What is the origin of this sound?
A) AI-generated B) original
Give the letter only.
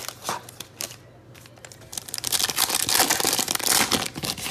B